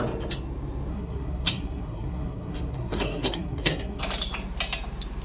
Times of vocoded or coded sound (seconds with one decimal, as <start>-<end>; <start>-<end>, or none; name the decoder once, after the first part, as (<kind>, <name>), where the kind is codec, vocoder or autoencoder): 0.9-4.0 (codec, SNAC)